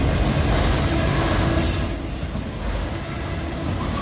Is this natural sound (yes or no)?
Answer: yes